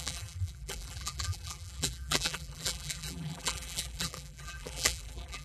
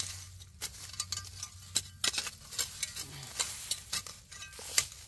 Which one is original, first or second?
second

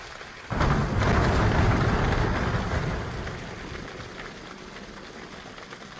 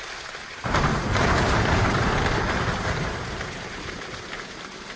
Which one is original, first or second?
first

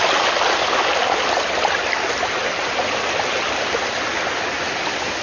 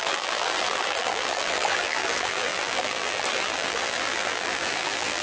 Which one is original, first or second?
first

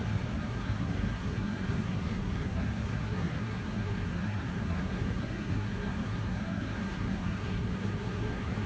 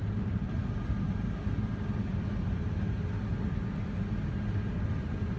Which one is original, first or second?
second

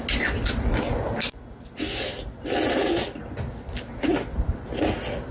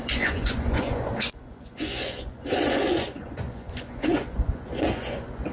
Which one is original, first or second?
first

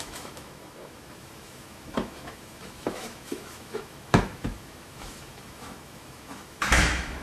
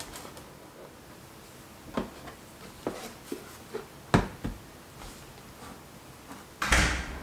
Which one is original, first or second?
second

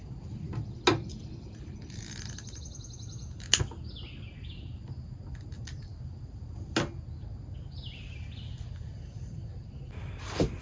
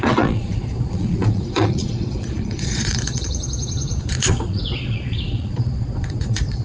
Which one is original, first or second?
first